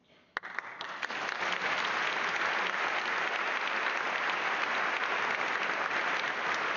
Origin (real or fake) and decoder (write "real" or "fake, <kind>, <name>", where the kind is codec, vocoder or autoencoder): real